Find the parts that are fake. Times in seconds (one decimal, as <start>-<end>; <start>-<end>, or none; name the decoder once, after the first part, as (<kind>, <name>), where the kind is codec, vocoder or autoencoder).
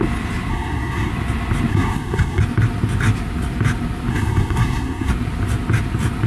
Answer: 0.5-1.1 (codec, SNAC); 1.7-2.4; 4.1-5.1